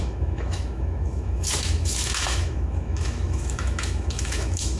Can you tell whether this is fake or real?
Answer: fake